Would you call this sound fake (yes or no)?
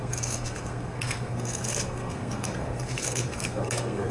yes